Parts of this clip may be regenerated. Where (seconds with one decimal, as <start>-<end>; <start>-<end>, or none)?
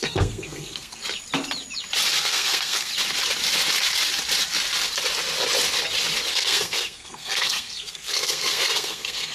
0.0-1.0; 2.2-2.9; 6.3-9.3